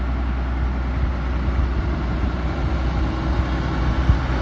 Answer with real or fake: real